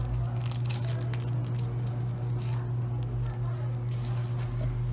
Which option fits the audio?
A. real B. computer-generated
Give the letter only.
A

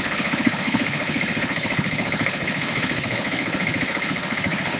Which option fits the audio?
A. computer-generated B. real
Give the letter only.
A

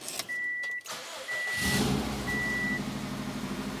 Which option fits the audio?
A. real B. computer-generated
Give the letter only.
A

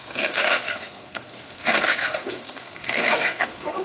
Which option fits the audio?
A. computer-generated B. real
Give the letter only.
A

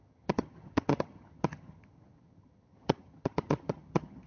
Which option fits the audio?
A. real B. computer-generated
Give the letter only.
B